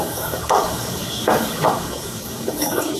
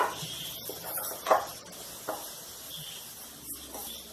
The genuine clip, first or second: second